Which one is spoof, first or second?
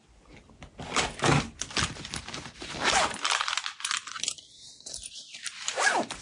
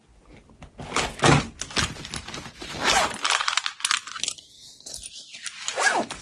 first